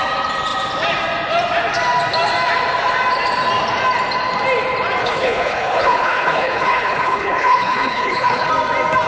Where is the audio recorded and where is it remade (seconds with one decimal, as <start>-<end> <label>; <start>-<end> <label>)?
0.0-5.0 recorded; 5.0-8.5 remade; 8.5-9.1 recorded